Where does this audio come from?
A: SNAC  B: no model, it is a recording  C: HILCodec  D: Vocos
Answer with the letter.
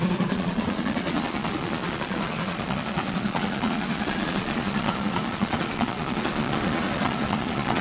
D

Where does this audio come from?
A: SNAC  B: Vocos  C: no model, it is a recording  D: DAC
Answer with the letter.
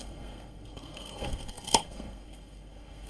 A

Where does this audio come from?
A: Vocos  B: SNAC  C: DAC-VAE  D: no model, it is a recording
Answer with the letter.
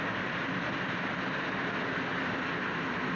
D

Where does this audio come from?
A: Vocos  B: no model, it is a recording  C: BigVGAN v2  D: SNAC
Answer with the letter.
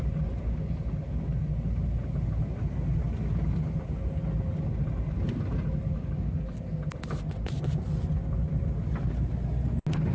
B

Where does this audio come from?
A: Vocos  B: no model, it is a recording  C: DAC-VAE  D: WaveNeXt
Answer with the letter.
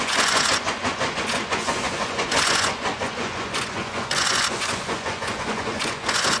A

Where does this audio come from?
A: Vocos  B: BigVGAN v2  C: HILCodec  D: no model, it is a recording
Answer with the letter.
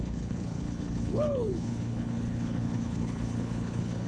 C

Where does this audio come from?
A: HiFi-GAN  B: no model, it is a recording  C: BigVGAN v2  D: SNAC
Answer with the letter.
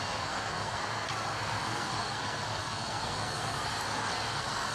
D